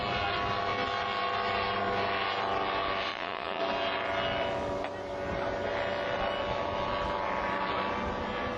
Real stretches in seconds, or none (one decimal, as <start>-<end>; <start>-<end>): 0.0-3.1; 3.6-8.6